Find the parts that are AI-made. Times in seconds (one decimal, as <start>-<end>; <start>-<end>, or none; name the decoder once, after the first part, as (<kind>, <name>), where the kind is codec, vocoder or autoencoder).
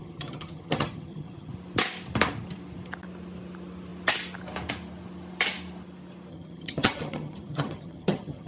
0.0-1.5 (vocoder, HiFi-GAN); 6.3-8.5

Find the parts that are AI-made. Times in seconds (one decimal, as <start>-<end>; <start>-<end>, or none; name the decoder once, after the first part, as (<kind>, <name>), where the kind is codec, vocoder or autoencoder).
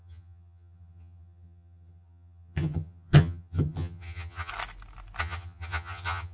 0.0-4.5 (vocoder, HiFi-GAN); 5.2-6.3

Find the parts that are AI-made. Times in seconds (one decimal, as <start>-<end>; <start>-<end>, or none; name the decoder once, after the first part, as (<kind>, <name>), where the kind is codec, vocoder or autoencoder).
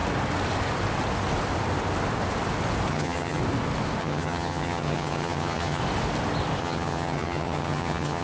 2.9-3.4 (vocoder, HiFi-GAN); 4.0-5.8; 6.6-8.2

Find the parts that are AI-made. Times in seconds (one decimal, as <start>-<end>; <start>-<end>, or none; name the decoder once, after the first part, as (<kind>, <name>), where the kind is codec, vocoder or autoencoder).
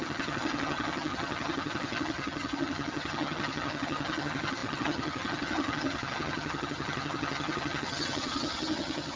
0.0-9.2 (vocoder, HiFi-GAN)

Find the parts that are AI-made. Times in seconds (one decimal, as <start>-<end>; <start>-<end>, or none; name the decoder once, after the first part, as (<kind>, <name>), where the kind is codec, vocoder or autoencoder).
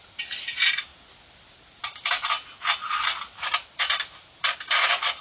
none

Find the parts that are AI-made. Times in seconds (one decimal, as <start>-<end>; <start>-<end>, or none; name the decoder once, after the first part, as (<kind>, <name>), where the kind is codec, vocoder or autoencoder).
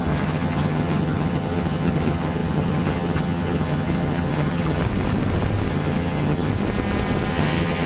0.0-4.8 (vocoder, HiFi-GAN); 5.7-6.5; 7.3-7.9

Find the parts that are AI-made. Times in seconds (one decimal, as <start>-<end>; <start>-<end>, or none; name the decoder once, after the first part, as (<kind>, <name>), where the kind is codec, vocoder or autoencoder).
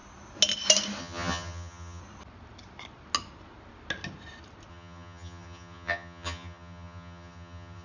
1.0-2.0 (vocoder, HiFi-GAN); 4.7-7.8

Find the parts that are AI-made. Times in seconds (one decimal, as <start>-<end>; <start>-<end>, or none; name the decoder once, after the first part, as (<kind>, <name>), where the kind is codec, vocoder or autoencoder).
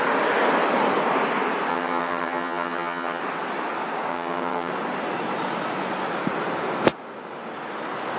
1.7-3.2 (vocoder, HiFi-GAN); 4.1-4.7